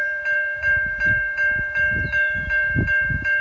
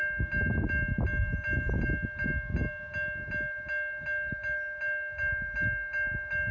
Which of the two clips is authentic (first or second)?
second